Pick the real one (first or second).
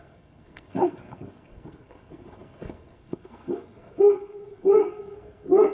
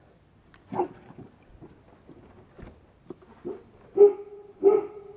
second